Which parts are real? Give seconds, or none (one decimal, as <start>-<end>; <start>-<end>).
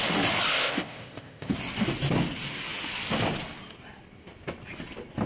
0.0-0.5; 1.5-5.3